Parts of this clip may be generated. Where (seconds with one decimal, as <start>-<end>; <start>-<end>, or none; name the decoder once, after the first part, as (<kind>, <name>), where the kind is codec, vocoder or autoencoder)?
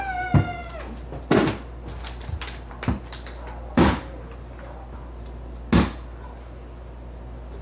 none